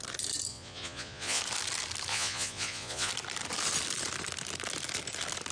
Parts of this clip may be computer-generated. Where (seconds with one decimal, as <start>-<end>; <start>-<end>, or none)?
0.5-1.4; 2.1-3.1